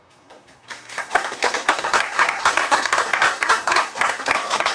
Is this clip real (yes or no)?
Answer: no